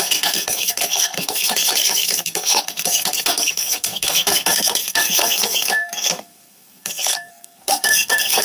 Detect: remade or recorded remade